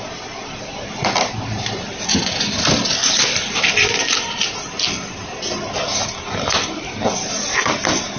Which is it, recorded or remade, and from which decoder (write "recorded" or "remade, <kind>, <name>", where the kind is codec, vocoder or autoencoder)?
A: recorded